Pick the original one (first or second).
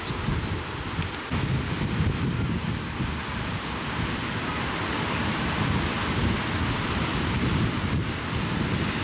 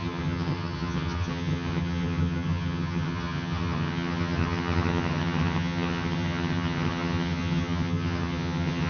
first